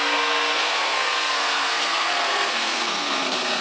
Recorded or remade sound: remade